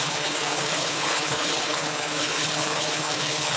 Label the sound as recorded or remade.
remade